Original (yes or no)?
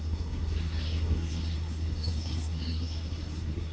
no